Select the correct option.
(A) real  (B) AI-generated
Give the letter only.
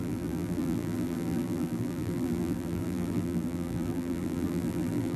B